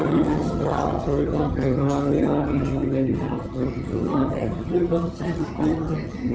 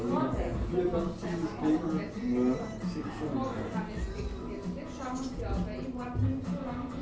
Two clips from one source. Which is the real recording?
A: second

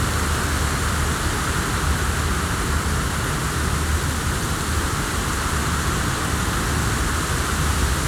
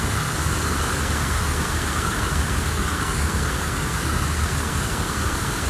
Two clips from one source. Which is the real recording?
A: first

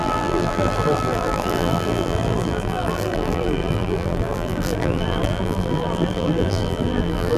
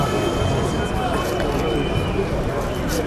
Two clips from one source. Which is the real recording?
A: second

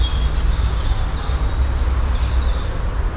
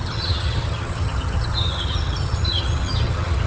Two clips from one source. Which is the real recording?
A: first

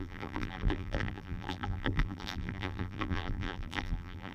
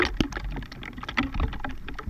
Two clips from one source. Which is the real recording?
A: second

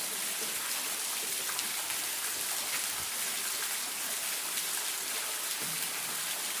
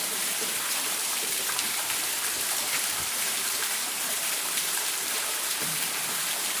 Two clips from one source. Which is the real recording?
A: first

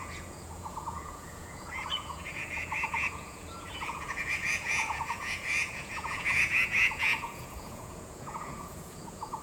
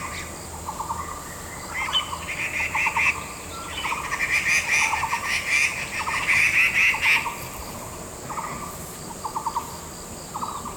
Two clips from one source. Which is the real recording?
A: second